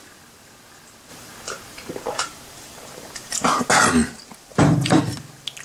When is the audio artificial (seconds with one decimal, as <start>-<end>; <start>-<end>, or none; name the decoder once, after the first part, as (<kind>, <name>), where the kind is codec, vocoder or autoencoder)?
1.1-3.7 (vocoder, BigVGAN v2); 4.5-5.0